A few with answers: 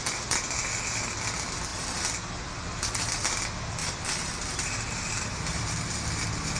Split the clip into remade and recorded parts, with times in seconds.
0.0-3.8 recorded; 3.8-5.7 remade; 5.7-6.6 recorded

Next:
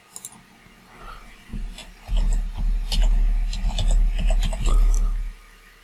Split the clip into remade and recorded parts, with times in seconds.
0.0-5.8 recorded

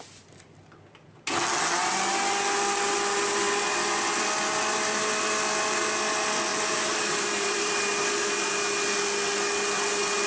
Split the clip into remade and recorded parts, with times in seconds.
0.0-6.5 recorded; 6.5-7.7 remade; 7.7-10.3 recorded

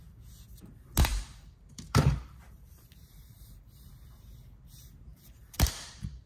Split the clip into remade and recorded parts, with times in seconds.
0.0-1.1 recorded; 1.1-3.9 remade; 3.9-5.1 recorded; 5.1-6.3 remade

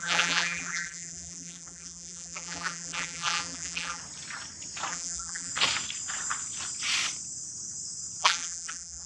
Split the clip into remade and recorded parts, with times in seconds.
0.0-4.0 remade; 4.0-4.9 recorded; 4.9-5.5 remade; 5.5-8.2 recorded; 8.2-9.1 remade

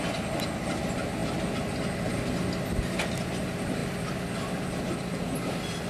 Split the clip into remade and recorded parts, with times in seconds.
0.0-5.9 recorded

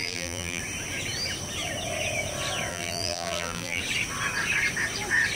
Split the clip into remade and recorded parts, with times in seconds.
0.0-0.6 remade; 0.6-2.7 recorded; 2.7-3.8 remade; 3.8-5.4 recorded

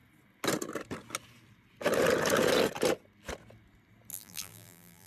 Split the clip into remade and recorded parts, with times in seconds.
0.0-4.1 recorded; 4.1-5.1 remade